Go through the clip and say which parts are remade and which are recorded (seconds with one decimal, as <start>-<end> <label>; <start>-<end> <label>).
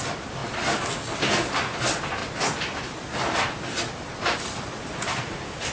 0.0-5.7 recorded